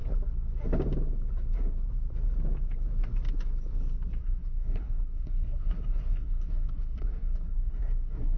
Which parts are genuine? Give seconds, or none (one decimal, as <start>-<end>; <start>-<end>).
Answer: 0.0-4.2

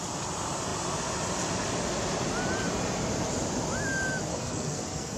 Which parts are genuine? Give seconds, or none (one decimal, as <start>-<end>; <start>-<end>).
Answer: 0.0-4.3

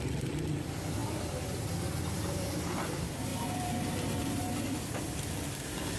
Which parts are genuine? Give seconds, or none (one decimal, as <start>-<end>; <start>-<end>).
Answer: 0.0-6.0

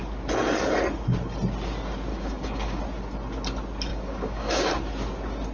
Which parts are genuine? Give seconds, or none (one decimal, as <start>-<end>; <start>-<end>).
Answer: 0.0-2.1; 2.8-3.9; 4.7-5.5

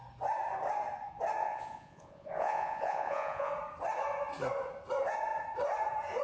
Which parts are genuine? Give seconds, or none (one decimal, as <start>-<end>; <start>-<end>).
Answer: 0.0-1.4; 3.5-6.2

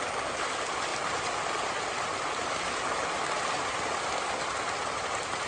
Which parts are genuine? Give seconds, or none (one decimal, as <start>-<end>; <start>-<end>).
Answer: 0.0-5.5

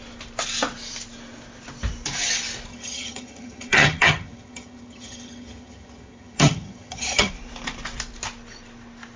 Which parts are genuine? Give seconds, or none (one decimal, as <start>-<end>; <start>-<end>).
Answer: 0.0-2.7; 7.3-9.2